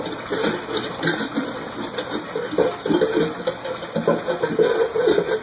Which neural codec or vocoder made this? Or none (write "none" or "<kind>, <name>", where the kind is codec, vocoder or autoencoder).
none